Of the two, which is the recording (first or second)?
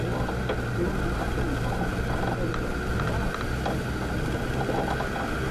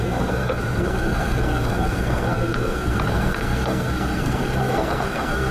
first